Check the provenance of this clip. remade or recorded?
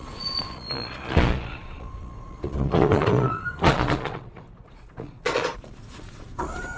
remade